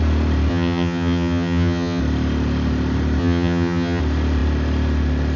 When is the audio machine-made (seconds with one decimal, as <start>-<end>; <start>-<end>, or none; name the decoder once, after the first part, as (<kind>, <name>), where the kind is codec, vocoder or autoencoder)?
0.5-2.0 (vocoder, HiFi-GAN); 3.2-4.0